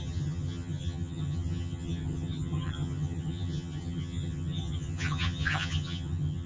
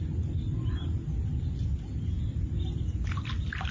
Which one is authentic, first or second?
second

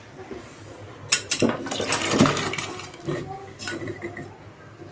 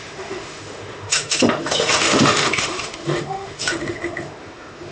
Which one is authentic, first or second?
first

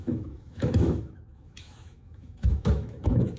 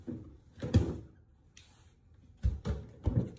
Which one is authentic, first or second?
second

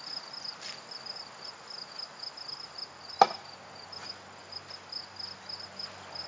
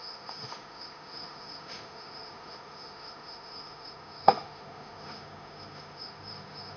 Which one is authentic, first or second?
first